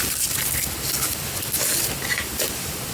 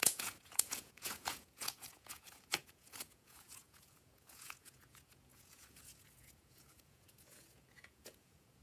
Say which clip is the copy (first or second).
second